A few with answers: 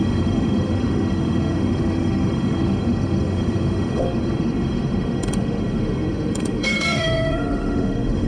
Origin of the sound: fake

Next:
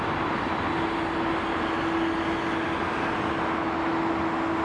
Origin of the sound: real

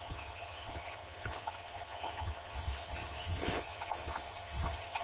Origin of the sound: fake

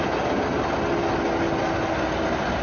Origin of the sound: real